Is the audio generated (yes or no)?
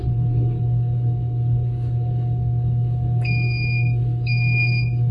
yes